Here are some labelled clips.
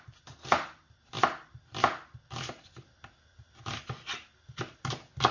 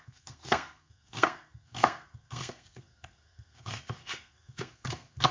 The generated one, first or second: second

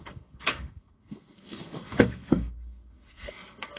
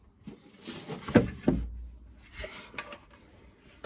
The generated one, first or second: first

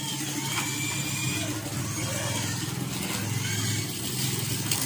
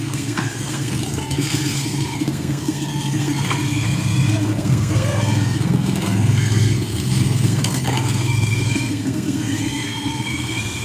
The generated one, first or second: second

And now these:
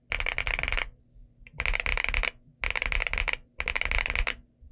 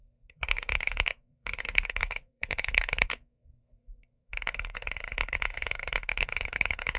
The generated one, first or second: second